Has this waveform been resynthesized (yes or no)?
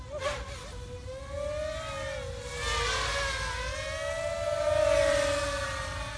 no